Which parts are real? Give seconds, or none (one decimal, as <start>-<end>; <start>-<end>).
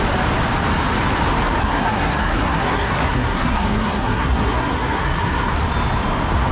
0.0-1.6; 5.5-6.5